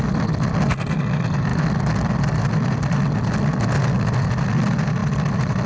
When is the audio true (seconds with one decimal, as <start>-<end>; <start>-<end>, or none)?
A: 0.0-5.7